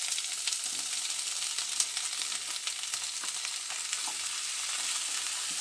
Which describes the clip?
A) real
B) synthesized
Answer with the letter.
A